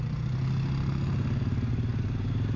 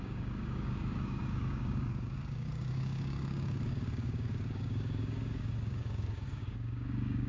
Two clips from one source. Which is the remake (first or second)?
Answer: second